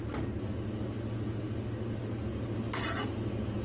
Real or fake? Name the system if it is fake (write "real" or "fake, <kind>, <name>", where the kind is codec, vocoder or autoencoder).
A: real